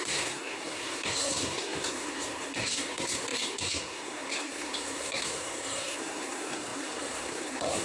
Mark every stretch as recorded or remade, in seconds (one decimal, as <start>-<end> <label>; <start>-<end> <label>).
0.0-7.8 remade